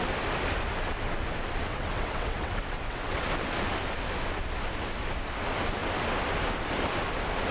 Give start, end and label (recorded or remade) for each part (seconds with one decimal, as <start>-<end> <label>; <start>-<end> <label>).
0.0-1.7 recorded; 1.7-3.2 remade; 3.2-7.5 recorded